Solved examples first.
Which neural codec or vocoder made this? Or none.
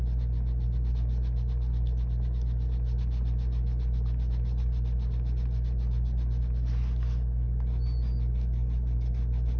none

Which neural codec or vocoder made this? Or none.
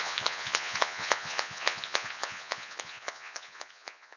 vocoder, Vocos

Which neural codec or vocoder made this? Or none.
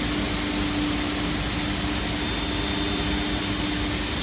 none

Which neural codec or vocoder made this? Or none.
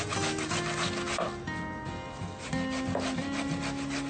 none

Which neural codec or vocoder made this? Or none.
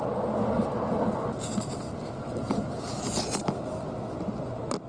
none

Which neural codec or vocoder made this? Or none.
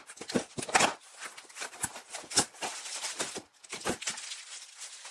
none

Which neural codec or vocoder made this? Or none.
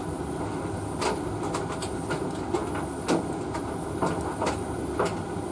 none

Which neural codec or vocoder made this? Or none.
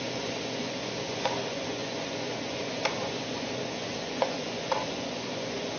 vocoder, Vocos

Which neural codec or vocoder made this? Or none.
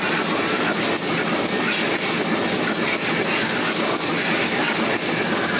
none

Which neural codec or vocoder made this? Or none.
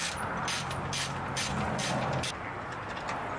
none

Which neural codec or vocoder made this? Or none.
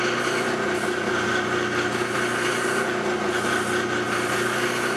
none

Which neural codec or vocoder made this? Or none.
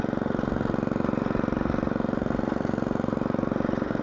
none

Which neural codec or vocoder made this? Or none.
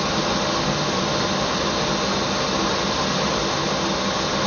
none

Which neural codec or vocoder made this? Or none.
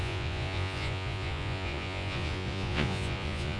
vocoder, Vocos